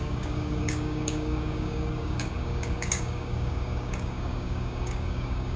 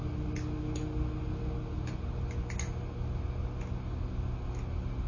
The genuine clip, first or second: second